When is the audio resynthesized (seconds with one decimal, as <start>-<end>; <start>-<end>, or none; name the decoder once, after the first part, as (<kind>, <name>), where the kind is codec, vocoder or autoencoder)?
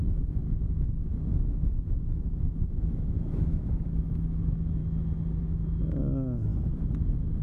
0.0-4.8 (autoencoder, DAC-VAE); 5.4-6.5